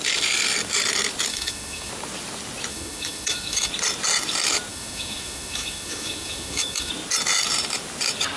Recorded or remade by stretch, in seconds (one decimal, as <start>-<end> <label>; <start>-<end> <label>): 0.0-1.3 recorded; 1.3-1.9 remade; 1.9-2.7 recorded; 2.7-3.7 remade; 3.7-4.7 recorded; 4.7-6.9 remade; 6.9-8.4 recorded